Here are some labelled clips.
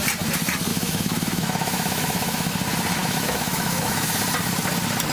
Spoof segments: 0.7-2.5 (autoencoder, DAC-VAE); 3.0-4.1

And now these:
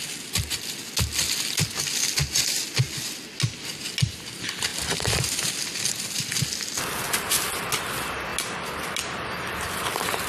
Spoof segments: none